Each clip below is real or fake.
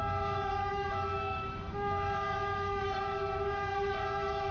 fake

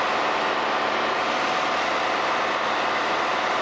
real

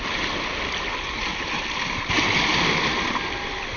real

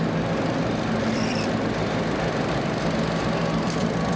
real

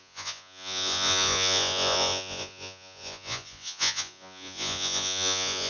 fake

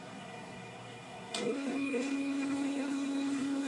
fake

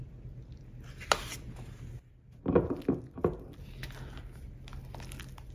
real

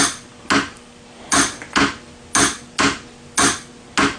real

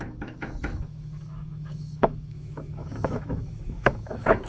fake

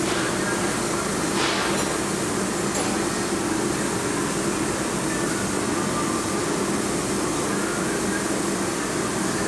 real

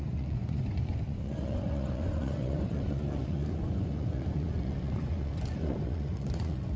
fake